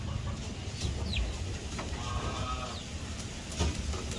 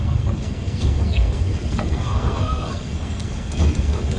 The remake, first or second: second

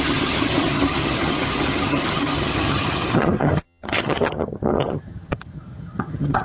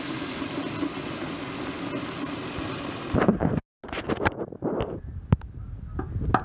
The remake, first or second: first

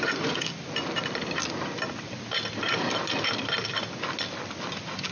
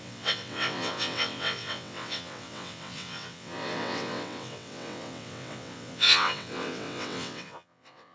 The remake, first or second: second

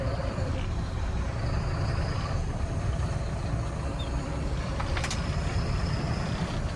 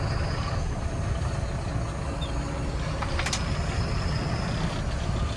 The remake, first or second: first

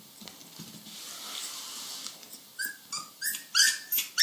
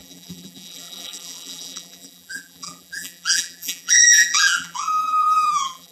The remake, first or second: second